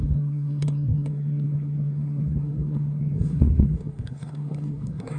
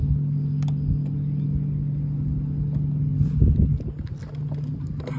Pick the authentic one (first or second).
second